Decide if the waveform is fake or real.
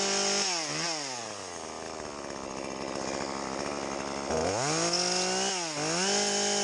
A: real